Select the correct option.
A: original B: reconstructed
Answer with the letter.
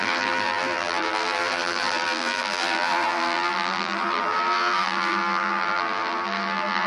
B